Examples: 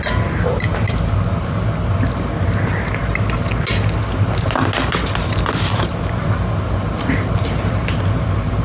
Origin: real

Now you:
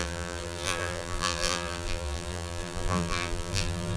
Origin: fake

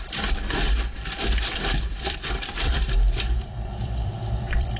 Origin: fake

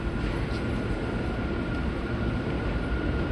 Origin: real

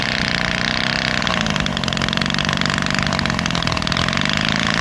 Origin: real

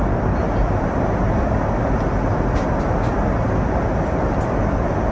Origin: real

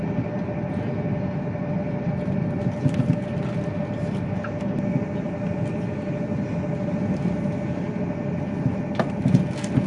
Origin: real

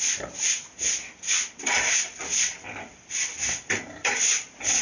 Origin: fake